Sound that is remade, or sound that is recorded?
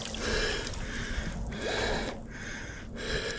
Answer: recorded